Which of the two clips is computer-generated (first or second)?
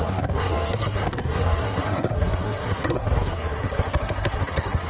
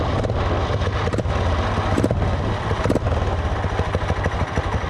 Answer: first